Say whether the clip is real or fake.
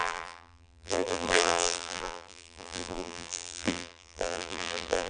fake